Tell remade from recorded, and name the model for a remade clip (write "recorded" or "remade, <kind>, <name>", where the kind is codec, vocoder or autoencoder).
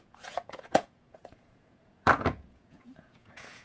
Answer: remade, vocoder, Vocos